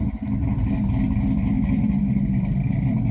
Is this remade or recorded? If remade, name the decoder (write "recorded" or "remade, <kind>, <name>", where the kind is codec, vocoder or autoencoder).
recorded